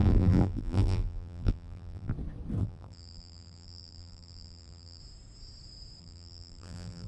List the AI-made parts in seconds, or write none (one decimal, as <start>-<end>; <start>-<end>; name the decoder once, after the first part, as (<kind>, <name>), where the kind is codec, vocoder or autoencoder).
0.0-2.1 (vocoder, BigVGAN v2); 2.6-5.0; 6.0-7.1